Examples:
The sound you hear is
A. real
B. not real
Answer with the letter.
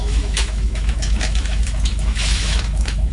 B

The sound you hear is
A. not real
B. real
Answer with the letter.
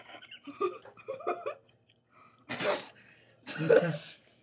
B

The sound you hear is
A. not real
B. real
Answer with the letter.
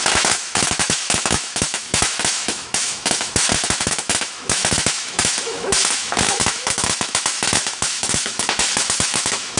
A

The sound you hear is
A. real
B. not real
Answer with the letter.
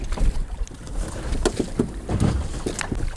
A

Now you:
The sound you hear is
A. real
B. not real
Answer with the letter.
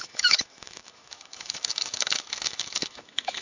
B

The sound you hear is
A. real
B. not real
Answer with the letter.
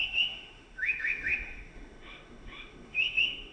B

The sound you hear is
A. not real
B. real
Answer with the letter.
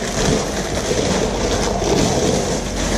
B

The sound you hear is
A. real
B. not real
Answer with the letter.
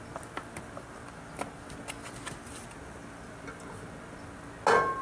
A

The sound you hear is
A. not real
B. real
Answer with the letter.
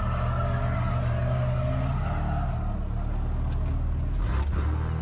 B